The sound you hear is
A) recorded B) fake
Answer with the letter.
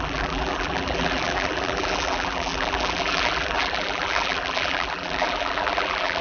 B